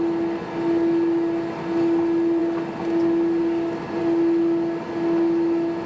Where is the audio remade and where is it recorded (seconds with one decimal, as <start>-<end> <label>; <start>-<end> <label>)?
0.0-5.9 recorded